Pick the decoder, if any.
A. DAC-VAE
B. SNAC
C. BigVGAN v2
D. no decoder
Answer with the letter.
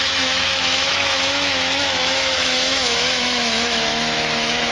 A